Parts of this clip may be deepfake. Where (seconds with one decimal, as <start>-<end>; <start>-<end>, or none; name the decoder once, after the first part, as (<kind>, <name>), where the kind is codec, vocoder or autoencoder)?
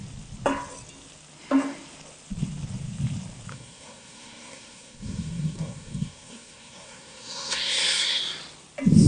3.5-8.2 (codec, SNAC)